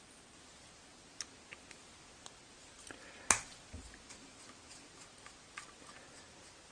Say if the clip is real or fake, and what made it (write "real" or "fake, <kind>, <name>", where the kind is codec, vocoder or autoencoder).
real